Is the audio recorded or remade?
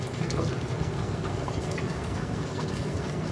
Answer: remade